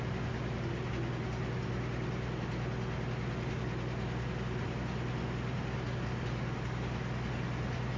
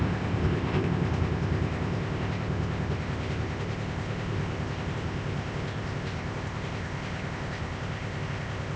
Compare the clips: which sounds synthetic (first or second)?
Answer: second